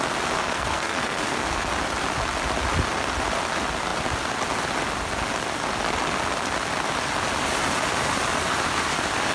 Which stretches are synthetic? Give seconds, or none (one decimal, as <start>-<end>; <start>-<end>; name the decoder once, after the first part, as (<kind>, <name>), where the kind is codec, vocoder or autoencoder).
0.4-1.7 (codec, SNAC)

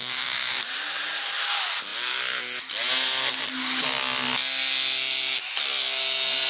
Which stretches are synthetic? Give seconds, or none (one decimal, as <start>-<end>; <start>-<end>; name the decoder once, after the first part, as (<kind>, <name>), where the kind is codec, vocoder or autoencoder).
0.0-0.6 (autoencoder, DAC-VAE)

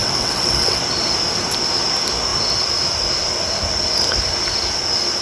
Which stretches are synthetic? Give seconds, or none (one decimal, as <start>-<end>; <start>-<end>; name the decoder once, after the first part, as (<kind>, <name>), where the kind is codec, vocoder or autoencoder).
0.0-0.8 (vocoder, WaveNeXt)

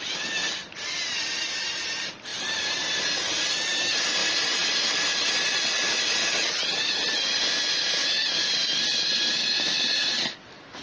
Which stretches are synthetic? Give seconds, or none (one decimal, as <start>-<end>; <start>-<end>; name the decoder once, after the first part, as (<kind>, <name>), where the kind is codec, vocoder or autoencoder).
2.3-2.9 (vocoder, BigVGAN v2); 8.0-8.7

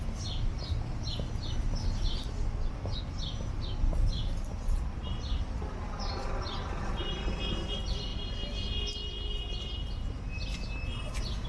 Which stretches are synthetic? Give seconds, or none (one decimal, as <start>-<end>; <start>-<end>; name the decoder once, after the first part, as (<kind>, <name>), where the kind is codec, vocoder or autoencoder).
none

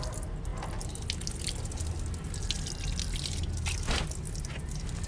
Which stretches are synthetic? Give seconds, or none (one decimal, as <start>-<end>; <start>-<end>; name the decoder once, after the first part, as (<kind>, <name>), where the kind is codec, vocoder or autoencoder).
none